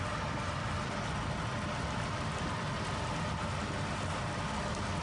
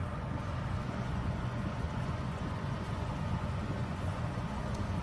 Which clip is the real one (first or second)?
first